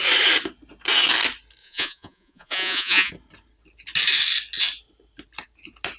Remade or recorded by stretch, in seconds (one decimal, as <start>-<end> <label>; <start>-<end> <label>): 0.0-1.6 recorded; 1.6-3.1 remade; 3.1-6.0 recorded

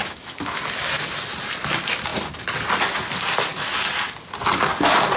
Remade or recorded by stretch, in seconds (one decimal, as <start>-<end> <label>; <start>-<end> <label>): 0.0-0.6 remade; 0.6-5.2 recorded

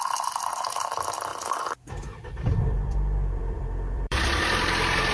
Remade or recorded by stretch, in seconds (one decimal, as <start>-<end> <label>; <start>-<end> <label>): 0.0-5.1 remade

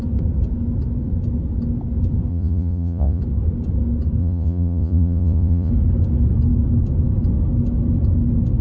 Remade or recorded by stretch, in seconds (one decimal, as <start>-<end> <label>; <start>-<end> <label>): 0.0-2.3 recorded; 2.3-3.2 remade; 3.2-4.2 recorded; 4.2-5.7 remade; 5.7-8.6 recorded

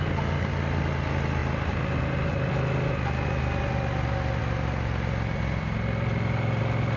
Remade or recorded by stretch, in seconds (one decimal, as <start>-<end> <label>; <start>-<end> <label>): 0.0-7.0 recorded

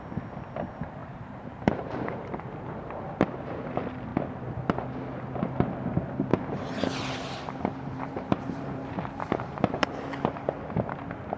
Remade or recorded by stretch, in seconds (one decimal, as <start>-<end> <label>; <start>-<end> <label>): 0.0-1.0 recorded; 1.0-2.6 remade; 2.6-6.3 recorded; 6.3-9.9 remade; 9.9-11.4 recorded

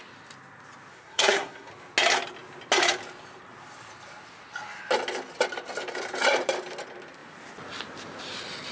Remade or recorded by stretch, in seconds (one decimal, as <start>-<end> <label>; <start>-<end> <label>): 0.0-0.9 recorded; 0.9-1.7 remade; 1.7-8.7 recorded

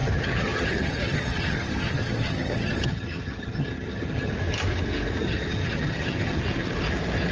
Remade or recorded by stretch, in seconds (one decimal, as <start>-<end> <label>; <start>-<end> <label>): 0.0-4.3 remade; 4.3-5.2 recorded; 5.2-6.4 remade; 6.4-7.3 recorded